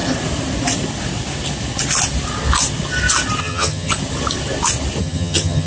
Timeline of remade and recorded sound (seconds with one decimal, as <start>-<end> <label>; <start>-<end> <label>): 0.0-3.4 recorded; 3.4-3.9 remade; 3.9-5.0 recorded; 5.0-5.7 remade